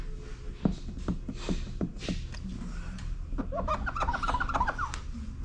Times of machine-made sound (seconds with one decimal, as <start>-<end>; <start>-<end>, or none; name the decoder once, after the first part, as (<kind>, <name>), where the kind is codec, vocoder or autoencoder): none